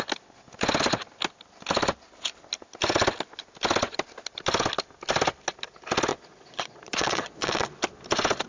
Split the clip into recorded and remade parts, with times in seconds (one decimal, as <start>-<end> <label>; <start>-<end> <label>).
0.0-6.1 recorded; 6.1-7.7 remade; 7.7-8.5 recorded